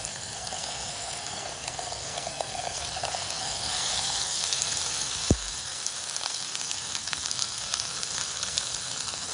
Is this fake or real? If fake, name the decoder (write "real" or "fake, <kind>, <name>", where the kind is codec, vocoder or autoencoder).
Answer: fake, codec, SNAC